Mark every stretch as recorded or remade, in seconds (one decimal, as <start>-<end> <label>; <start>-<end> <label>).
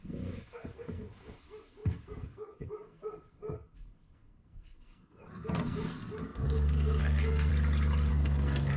0.0-7.5 remade; 7.5-8.1 recorded; 8.1-8.8 remade